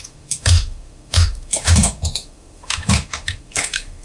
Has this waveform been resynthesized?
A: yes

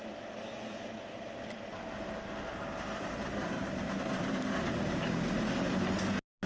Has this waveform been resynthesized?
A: no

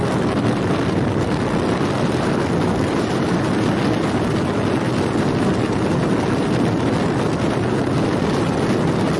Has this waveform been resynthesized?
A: no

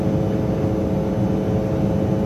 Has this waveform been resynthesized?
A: no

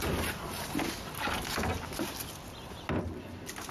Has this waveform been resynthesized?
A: no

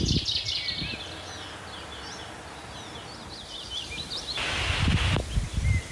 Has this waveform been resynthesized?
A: no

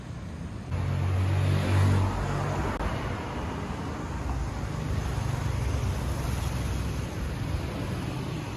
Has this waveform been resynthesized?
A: no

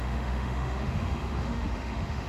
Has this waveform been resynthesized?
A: yes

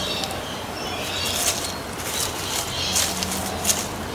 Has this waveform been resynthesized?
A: no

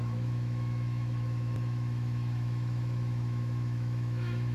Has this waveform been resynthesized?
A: yes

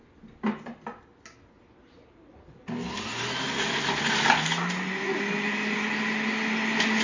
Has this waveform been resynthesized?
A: no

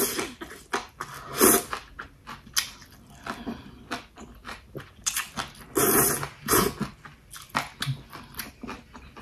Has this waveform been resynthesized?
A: no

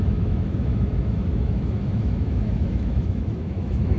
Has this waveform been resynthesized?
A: yes